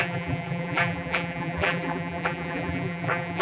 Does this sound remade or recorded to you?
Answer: remade